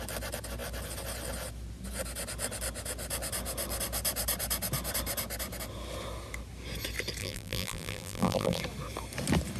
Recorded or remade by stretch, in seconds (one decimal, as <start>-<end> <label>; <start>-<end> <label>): 0.0-7.2 recorded; 7.2-8.6 remade; 8.6-9.6 recorded